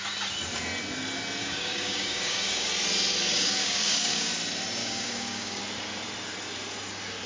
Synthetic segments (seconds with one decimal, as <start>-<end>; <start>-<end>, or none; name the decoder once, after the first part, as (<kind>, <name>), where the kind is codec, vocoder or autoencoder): 1.4-2.7 (codec, DAC); 3.3-4.3; 4.8-5.6